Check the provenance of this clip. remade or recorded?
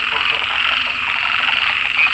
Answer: recorded